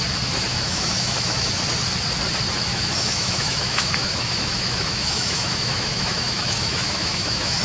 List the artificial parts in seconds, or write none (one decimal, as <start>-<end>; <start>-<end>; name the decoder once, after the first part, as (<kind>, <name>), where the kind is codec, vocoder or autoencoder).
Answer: 0.5-1.5 (autoencoder, DAC-VAE); 2.7-7.6